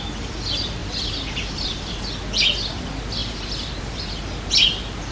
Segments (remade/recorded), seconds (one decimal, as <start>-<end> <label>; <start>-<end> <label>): 0.0-0.8 recorded; 0.8-1.9 remade; 1.9-5.1 recorded